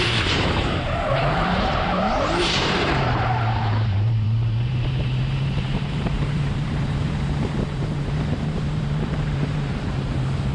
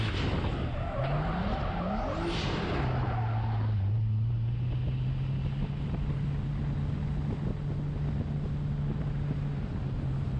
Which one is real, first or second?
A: second